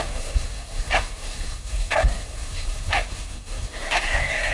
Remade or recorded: remade